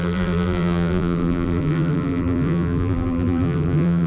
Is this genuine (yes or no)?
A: no